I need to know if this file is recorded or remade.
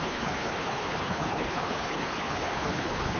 remade